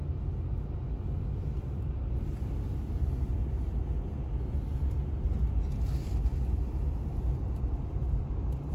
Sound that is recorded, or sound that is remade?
recorded